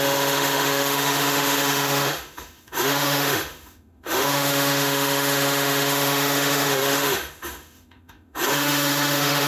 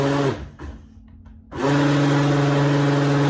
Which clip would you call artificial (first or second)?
first